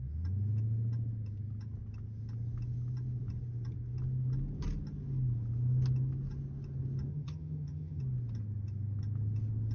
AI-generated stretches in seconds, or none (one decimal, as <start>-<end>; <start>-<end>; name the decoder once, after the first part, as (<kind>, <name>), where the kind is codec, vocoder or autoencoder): 7.1-8.0 (vocoder, HiFi-GAN)